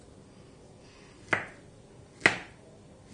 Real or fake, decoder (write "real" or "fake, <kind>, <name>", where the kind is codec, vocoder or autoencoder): real